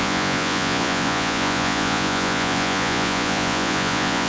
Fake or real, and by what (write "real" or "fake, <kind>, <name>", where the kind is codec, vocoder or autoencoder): fake, vocoder, Vocos